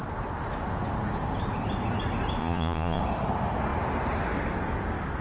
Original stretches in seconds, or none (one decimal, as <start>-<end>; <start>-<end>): 0.0-2.4; 3.0-5.2